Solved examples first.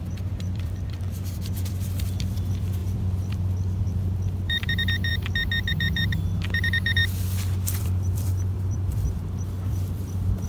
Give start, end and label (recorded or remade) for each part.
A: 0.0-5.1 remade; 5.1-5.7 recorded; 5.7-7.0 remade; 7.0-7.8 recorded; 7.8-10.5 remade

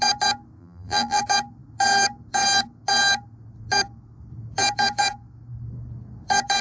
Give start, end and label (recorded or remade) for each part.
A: 0.0-0.6 recorded; 0.6-1.2 remade; 1.2-6.6 recorded

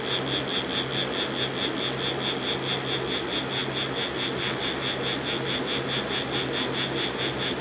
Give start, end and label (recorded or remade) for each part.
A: 0.0-7.6 recorded

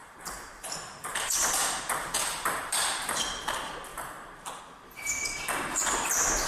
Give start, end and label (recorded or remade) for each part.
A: 0.0-3.2 remade; 3.2-3.9 recorded; 3.9-4.6 remade; 4.6-6.5 recorded

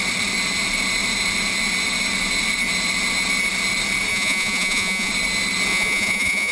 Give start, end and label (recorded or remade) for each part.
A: 0.0-4.1 recorded; 4.1-5.1 remade; 5.1-5.7 recorded; 5.7-6.5 remade

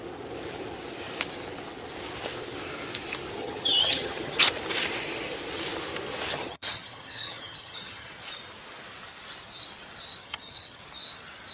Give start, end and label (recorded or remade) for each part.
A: 0.0-3.4 recorded; 3.4-4.4 remade; 4.4-6.3 recorded; 6.3-8.1 remade; 8.1-10.2 recorded; 10.2-10.8 remade; 10.8-11.5 recorded

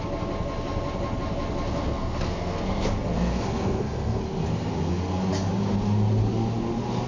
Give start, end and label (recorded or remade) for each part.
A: 0.0-1.8 recorded; 1.8-4.2 remade; 4.2-7.1 recorded

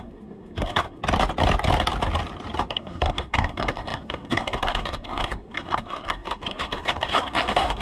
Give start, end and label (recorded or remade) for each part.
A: 0.0-1.0 remade; 1.0-2.7 recorded; 2.7-7.8 remade